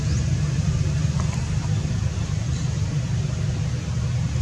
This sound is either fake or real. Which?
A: real